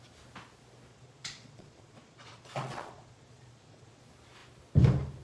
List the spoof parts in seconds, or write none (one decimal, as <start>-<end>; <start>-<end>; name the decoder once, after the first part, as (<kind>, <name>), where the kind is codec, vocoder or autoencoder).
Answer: 0.9-4.0 (vocoder, Vocos)